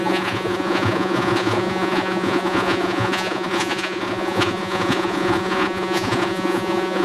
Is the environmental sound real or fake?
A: fake